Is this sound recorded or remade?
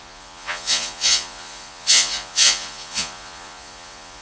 remade